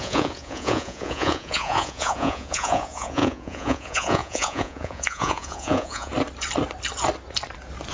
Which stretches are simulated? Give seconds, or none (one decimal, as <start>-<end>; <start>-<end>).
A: 0.0-6.1